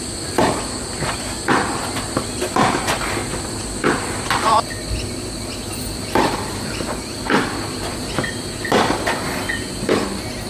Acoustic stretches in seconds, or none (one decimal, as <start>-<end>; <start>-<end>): 0.0-10.5